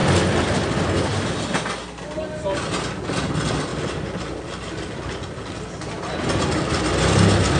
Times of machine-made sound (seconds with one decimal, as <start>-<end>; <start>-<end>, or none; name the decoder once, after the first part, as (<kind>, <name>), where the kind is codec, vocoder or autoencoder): none